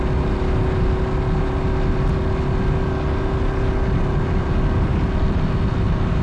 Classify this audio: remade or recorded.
recorded